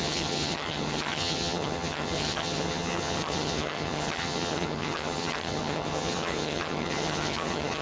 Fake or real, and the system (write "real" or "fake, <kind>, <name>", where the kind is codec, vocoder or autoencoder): fake, vocoder, HiFi-GAN